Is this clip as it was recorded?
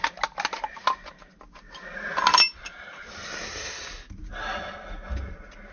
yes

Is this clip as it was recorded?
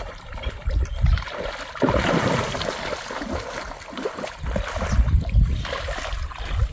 yes